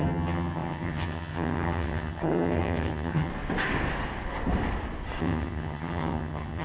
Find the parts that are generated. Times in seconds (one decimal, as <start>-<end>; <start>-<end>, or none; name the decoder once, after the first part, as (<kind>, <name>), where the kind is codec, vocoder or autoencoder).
0.0-3.3 (vocoder, HiFi-GAN); 5.2-6.6